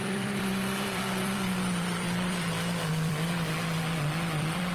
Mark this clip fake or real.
fake